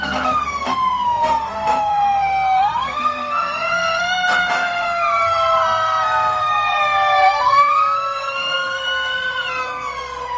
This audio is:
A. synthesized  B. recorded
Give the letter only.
A